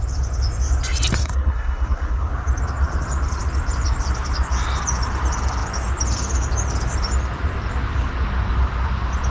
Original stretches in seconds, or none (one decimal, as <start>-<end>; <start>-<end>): 0.0-1.2; 2.3-9.3